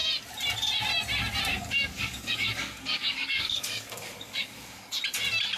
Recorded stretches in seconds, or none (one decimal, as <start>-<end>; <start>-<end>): 0.0-1.5; 4.9-5.6